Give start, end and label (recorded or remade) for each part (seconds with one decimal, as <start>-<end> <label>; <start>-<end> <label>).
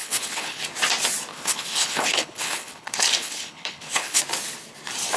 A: 0.0-0.6 remade; 0.6-1.3 recorded; 1.3-4.2 remade; 4.2-5.2 recorded